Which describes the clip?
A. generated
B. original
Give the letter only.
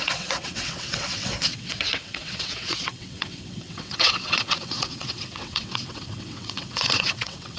A